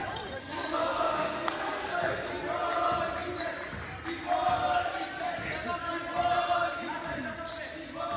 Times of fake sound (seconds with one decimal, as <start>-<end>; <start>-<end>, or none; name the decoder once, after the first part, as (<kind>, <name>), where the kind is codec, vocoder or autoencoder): 0.4-2.3 (codec, SNAC)